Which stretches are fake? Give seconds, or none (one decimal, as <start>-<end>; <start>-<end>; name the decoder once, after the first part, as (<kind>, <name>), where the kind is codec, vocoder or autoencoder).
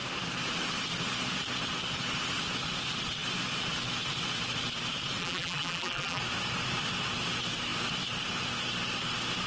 5.2-6.2 (vocoder, BigVGAN v2)